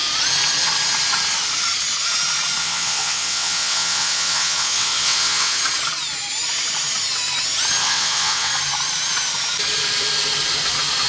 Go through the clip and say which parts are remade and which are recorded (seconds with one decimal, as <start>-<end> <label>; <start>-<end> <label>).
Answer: 0.0-2.6 recorded; 2.6-5.6 remade; 5.6-7.8 recorded; 7.8-8.5 remade; 8.5-11.1 recorded